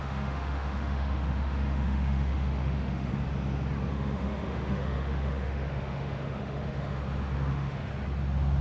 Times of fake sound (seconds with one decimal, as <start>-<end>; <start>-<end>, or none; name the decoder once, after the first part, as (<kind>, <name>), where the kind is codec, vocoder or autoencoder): 0.0-3.1 (autoencoder, DAC-VAE); 3.9-7.0; 7.5-7.9